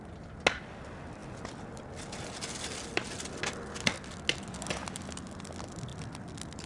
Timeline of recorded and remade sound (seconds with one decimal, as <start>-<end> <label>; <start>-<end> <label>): 0.0-6.7 recorded